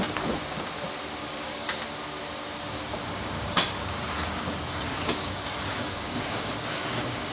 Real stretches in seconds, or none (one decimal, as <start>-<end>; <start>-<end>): 0.0-1.2; 1.8-3.2